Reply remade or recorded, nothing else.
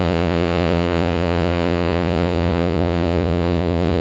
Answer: remade